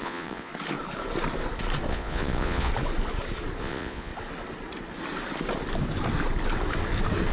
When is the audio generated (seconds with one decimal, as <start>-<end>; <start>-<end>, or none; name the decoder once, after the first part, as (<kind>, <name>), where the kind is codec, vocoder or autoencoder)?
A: 0.0-0.5 (vocoder, Vocos); 1.9-2.7; 3.6-4.1